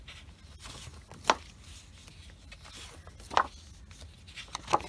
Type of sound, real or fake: real